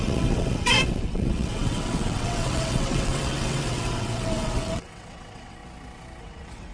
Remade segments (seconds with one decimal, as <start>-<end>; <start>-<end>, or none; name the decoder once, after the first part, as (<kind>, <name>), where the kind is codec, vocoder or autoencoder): 0.0-5.6 (vocoder, WaveNeXt); 6.2-6.7